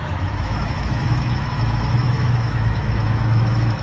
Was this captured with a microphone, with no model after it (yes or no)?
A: no